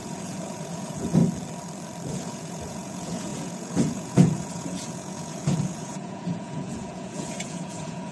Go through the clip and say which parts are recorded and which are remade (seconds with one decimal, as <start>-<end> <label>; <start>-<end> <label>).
0.0-1.2 remade; 1.2-2.1 recorded; 2.1-8.1 remade

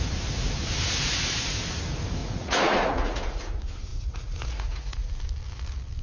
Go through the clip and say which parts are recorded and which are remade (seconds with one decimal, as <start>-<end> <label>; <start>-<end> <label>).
0.0-2.2 recorded; 2.2-3.4 remade; 3.4-3.9 recorded; 3.9-5.1 remade; 5.1-6.0 recorded

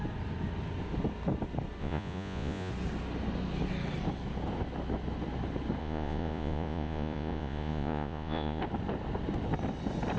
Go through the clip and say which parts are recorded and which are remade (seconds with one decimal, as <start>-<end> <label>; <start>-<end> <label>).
0.0-1.8 recorded; 1.8-2.7 remade; 2.7-5.8 recorded; 5.8-8.6 remade; 8.6-10.2 recorded

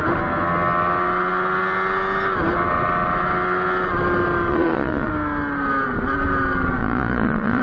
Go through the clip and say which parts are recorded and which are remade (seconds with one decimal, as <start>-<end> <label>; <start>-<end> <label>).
0.0-4.5 recorded; 4.5-5.1 remade; 5.1-6.8 recorded; 6.8-7.6 remade

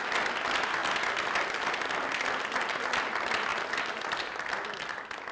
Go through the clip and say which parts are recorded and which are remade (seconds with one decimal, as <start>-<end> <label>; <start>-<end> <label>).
0.0-5.3 recorded

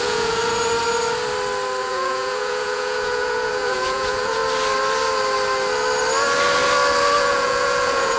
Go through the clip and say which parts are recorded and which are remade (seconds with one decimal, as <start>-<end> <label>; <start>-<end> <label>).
0.0-0.4 remade; 0.4-1.8 recorded; 1.8-4.4 remade; 4.4-7.2 recorded; 7.2-8.2 remade

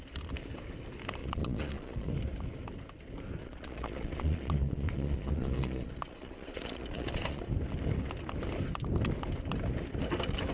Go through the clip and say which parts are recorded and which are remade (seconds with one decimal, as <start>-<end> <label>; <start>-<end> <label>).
0.0-1.2 recorded; 1.2-2.1 remade; 2.1-3.4 recorded; 3.4-7.4 remade; 7.4-10.5 recorded